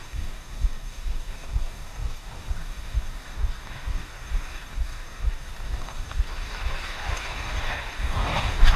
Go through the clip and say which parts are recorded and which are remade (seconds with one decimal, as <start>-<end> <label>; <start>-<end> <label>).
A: 0.0-8.8 remade